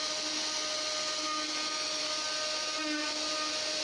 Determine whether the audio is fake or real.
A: real